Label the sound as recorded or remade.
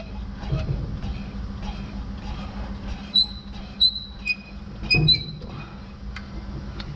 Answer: recorded